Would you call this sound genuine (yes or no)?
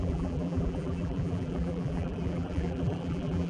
no